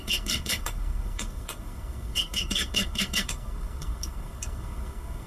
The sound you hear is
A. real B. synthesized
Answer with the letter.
B